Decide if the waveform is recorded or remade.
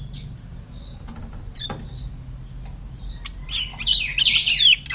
recorded